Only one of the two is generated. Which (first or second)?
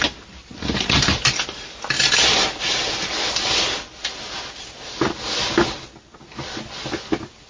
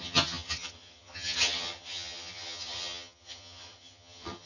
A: second